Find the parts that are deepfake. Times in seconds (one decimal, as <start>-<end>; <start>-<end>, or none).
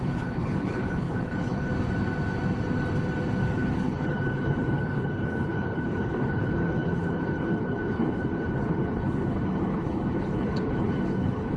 0.0-1.7; 3.4-11.6